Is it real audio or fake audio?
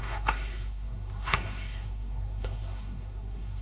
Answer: fake